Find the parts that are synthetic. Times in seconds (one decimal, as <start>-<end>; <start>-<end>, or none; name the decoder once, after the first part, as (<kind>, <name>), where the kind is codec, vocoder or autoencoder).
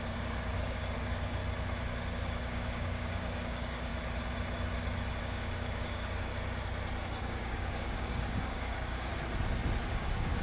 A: 0.0-1.4 (codec, DAC); 2.2-3.9; 5.2-6.3; 7.0-9.1; 9.9-10.4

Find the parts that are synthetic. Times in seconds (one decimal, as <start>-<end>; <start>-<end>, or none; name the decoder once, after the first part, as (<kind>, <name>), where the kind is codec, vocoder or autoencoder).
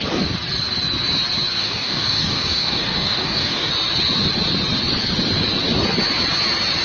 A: 1.6-3.7 (codec, DAC)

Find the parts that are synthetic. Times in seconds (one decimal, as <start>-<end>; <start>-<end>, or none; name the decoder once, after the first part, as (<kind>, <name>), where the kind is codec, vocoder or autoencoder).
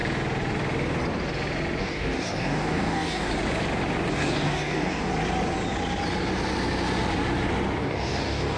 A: 1.8-3.3 (codec, DAC); 4.1-5.1; 7.8-8.6